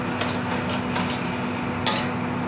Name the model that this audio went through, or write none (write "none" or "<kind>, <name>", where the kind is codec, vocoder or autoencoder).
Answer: none